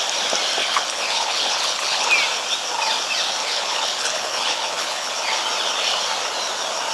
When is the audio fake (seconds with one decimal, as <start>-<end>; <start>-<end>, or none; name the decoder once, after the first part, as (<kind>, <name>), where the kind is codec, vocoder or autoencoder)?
0.6-2.1 (codec, HILCodec); 3.4-5.1